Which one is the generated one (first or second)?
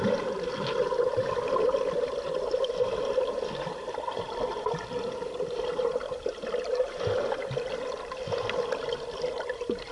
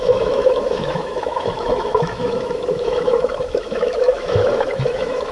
second